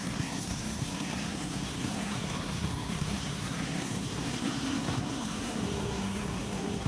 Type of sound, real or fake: fake